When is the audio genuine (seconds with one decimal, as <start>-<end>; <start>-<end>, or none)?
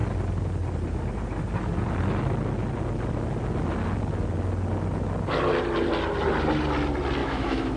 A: 0.0-7.2